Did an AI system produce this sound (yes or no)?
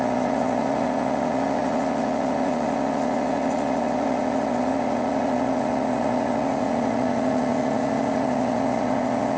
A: yes